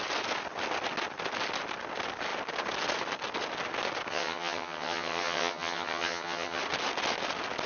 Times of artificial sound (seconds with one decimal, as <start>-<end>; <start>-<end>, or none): 4.1-6.6